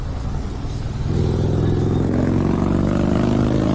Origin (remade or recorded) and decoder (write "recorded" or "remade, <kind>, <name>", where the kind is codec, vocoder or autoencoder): recorded